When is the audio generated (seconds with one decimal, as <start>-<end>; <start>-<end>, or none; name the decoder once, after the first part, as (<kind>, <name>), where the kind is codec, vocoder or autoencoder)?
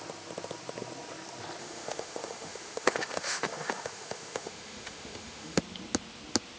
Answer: 1.6-5.6 (autoencoder, DAC-VAE)